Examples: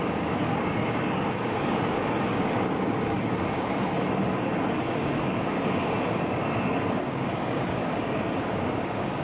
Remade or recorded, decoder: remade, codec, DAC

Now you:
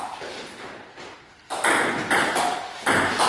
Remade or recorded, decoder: recorded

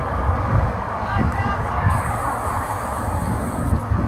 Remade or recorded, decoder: remade, codec, DAC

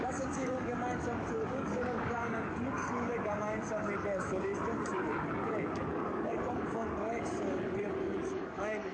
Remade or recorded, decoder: remade, codec, DAC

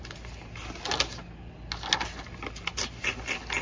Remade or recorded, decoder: recorded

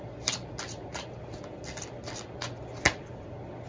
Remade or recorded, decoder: recorded